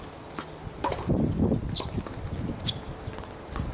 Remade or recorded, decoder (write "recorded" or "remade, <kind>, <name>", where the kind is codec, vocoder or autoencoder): recorded